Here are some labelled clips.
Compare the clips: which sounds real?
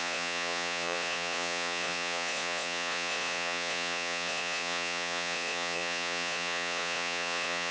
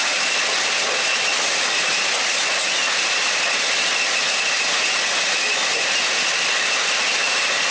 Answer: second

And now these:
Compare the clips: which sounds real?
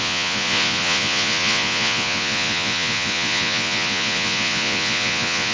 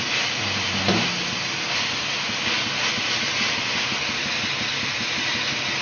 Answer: second